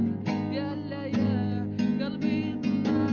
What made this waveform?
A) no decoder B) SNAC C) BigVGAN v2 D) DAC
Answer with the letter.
A